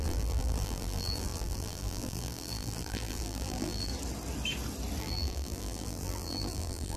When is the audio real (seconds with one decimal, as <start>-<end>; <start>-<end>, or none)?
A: 3.9-5.0